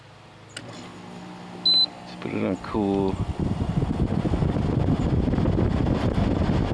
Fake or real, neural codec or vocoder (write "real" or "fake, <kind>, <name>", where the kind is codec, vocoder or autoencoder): real